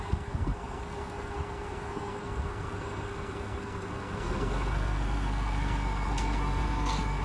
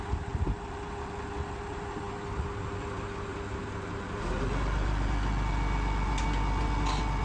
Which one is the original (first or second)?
second